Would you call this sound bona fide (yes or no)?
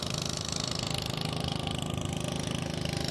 yes